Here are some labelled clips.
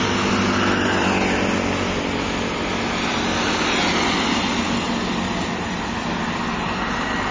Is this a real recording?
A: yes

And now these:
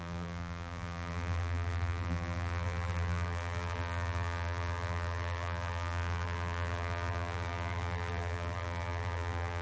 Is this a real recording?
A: no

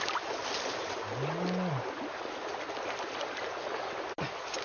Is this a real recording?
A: yes